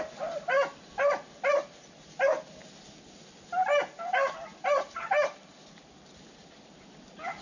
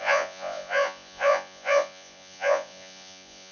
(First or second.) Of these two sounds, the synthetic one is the second